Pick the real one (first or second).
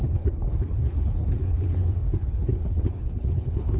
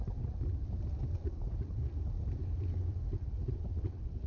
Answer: second